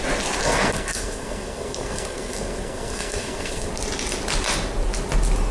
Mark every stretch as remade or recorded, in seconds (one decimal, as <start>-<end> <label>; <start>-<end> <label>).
0.0-0.4 recorded; 0.4-3.7 remade; 3.7-5.5 recorded